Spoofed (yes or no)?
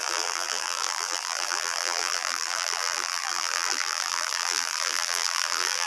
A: yes